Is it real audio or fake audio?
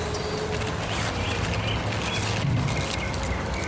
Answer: real